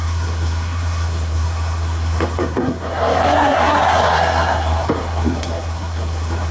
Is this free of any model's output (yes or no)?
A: no